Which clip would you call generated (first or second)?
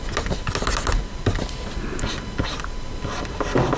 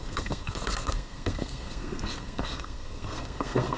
second